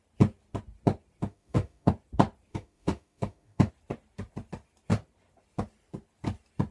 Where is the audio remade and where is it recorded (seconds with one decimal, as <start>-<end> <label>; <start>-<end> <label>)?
0.0-1.2 recorded; 1.2-1.9 remade; 1.9-2.5 recorded; 2.5-3.7 remade; 3.7-6.7 recorded